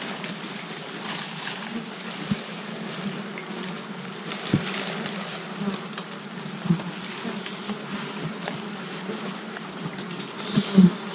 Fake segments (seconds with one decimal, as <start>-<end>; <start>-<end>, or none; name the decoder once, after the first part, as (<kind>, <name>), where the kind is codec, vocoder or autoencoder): none